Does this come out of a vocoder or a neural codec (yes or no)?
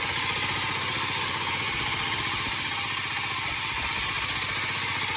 no